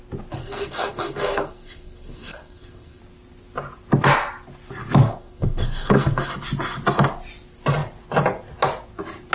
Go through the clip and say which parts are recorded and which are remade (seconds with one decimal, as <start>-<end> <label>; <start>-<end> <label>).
0.0-0.4 recorded; 0.4-3.0 remade; 3.0-5.0 recorded; 5.0-6.3 remade; 6.3-9.3 recorded